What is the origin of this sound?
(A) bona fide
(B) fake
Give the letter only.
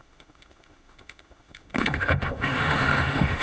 B